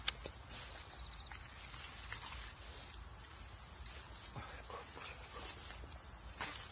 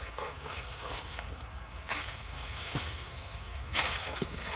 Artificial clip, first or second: second